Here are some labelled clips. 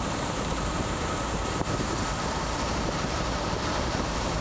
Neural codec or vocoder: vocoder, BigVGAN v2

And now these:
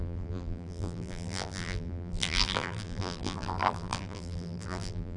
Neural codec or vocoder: vocoder, BigVGAN v2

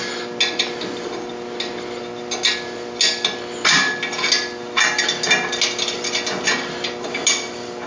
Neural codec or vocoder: none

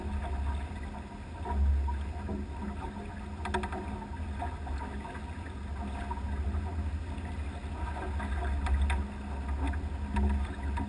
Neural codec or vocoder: none